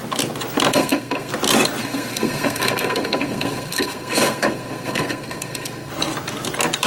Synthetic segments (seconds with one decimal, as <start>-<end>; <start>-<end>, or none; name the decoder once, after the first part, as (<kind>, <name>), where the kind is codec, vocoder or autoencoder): 0.7-1.3 (codec, SNAC); 1.8-5.9